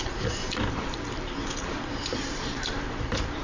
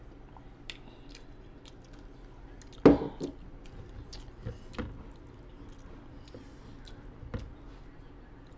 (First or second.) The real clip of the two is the second